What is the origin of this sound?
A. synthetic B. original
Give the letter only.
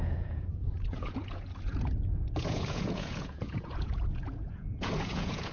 A